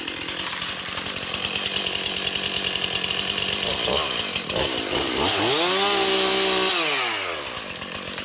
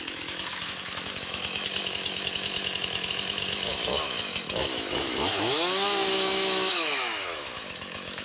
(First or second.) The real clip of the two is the first